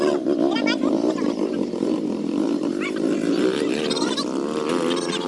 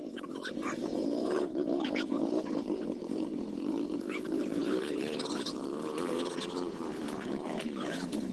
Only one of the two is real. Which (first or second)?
first